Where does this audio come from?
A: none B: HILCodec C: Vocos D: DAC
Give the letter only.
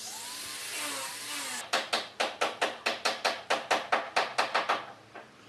A